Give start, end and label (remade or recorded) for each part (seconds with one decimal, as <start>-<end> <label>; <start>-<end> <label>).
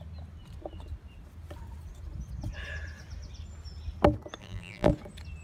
0.0-4.4 recorded; 4.4-4.9 remade; 4.9-5.4 recorded